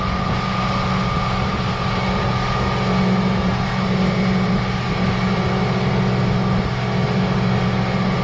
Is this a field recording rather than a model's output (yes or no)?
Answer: yes